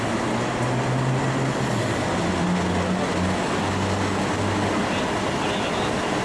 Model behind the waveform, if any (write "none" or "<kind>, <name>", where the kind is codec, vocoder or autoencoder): none